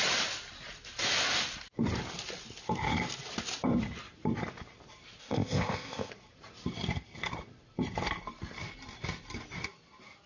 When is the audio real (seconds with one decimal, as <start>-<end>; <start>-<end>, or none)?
0.0-5.2; 6.1-10.3